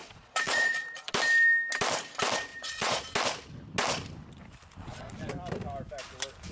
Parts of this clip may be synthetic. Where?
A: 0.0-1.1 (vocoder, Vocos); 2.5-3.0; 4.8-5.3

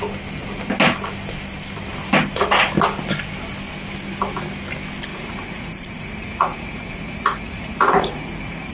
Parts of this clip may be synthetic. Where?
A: 5.1-8.7 (vocoder, Vocos)

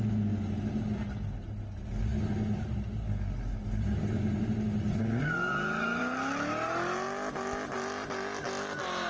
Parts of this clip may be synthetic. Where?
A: none

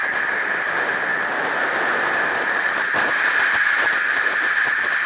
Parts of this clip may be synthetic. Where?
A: none

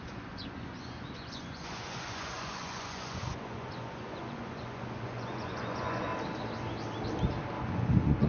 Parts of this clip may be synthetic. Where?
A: 0.0-6.1 (vocoder, Vocos); 7.6-8.3

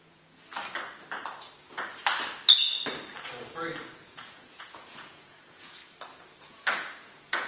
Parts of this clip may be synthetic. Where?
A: 0.0-0.5 (vocoder, Vocos); 3.9-5.8; 6.5-7.5